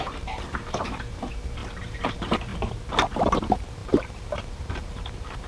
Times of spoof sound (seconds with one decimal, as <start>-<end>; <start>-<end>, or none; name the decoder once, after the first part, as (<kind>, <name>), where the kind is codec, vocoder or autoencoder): 0.0-2.5 (vocoder, BigVGAN v2); 3.3-5.5